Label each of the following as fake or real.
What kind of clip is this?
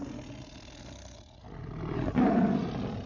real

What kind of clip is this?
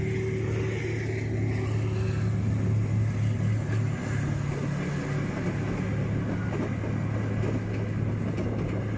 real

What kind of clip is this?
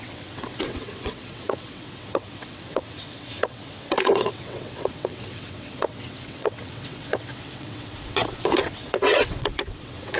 fake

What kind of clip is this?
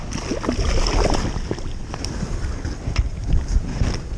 real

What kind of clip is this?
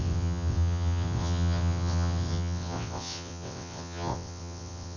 fake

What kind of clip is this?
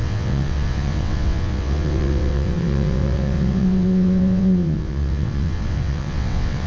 fake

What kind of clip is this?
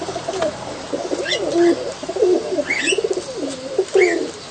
real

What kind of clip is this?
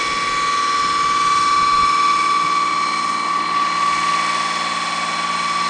real